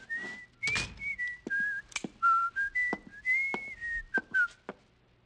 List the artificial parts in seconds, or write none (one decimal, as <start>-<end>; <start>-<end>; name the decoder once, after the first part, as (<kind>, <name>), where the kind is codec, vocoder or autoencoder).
none